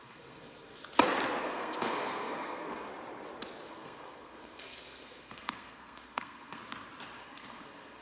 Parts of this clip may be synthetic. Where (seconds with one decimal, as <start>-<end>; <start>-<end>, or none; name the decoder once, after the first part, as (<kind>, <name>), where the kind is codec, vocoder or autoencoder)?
0.0-0.8 (codec, SNAC); 1.4-2.9; 3.7-6.6; 7.2-8.0